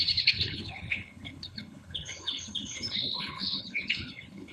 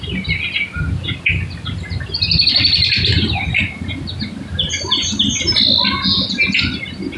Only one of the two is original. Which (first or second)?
second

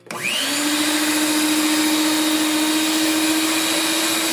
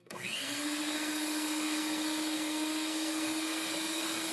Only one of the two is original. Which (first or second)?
first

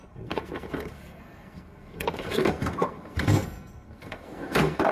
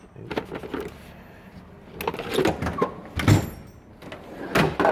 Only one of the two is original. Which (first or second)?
second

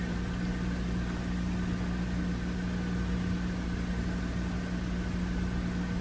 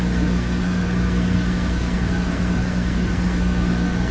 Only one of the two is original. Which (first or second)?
first